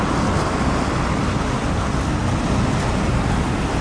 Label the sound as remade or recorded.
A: recorded